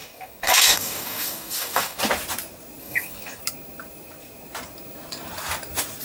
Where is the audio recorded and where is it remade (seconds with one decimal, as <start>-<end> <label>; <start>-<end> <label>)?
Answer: 0.0-2.0 remade; 2.0-2.8 recorded; 2.8-3.4 remade; 3.4-6.0 recorded